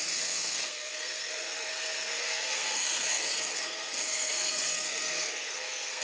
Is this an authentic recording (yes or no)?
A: no